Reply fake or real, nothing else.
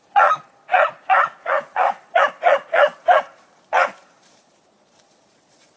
fake